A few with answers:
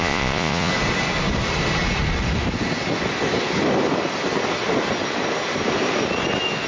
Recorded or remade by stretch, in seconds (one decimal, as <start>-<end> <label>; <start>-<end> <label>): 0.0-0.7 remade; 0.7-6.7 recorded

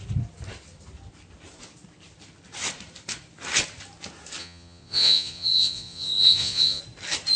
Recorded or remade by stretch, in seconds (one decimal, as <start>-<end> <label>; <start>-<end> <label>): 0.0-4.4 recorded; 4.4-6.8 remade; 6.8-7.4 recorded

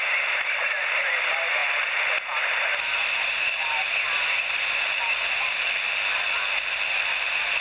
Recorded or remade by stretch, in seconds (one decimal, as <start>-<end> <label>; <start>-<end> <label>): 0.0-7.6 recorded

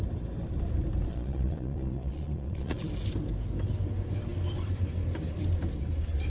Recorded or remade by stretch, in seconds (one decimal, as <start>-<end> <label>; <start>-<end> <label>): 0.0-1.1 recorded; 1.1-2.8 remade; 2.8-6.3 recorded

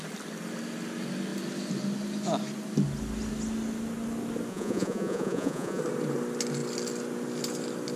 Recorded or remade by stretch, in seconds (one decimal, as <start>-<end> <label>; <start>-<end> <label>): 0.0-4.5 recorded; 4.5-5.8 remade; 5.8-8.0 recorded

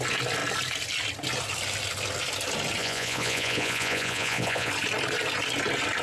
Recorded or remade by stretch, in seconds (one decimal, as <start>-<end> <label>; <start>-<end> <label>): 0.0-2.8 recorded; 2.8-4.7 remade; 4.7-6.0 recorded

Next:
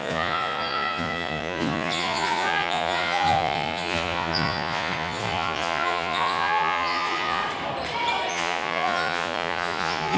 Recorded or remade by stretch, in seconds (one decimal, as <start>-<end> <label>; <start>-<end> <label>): 0.0-7.4 remade; 7.4-8.3 recorded; 8.3-10.2 remade

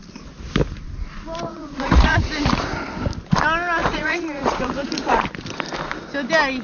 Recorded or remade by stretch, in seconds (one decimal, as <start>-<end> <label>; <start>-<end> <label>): 0.0-1.5 recorded; 1.5-2.2 remade; 2.2-3.8 recorded; 3.8-5.2 remade; 5.2-6.6 recorded